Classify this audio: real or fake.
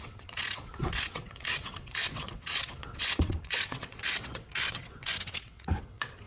fake